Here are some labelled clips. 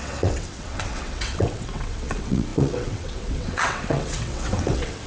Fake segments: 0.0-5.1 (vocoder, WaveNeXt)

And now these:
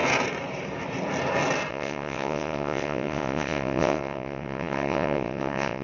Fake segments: 1.7-5.8 (vocoder, WaveNeXt)

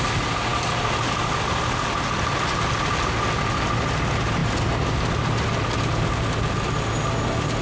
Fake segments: none

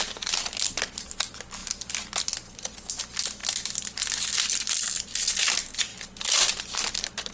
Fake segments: none